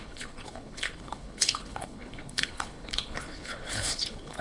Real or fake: fake